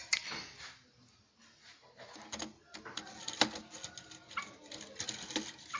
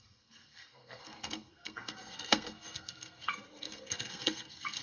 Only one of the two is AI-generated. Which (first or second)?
second